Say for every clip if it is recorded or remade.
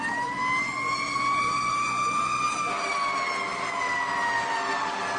recorded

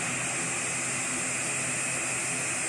recorded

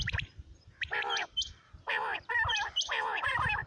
remade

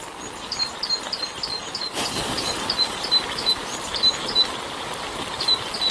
recorded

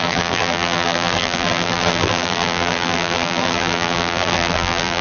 remade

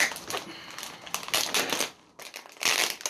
recorded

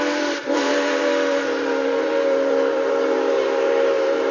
remade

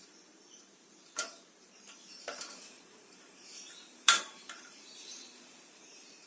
remade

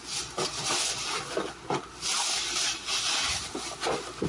recorded